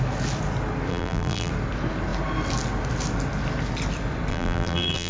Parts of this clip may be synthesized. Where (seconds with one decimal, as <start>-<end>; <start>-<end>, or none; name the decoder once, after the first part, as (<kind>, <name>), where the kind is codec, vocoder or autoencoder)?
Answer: 0.9-1.5 (vocoder, BigVGAN v2); 4.3-5.1